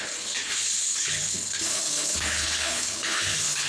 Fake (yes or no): yes